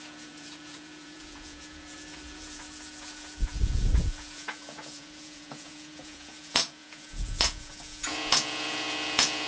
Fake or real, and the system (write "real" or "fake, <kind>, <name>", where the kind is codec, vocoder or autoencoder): fake, vocoder, Vocos